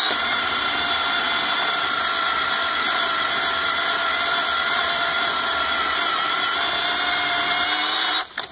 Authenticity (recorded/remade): recorded